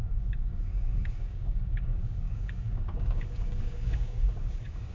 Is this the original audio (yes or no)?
no